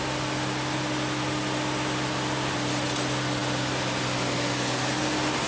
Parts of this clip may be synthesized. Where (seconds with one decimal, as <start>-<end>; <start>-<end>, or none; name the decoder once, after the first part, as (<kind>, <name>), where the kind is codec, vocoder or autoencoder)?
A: none